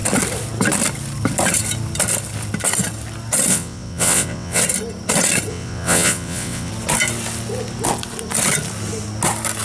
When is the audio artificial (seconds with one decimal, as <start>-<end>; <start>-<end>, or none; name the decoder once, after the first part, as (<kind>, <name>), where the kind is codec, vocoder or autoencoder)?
3.5-4.6 (vocoder, WaveNeXt); 5.5-6.7